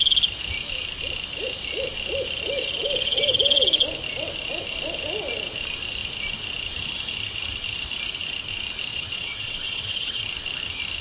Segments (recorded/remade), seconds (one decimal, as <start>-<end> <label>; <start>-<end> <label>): 0.0-8.9 recorded; 8.9-10.2 remade; 10.2-11.0 recorded